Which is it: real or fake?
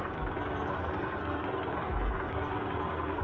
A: fake